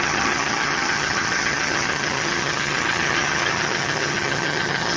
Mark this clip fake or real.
fake